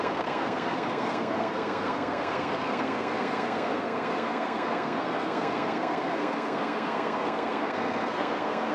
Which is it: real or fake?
fake